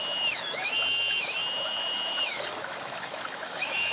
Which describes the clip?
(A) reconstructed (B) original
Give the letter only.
A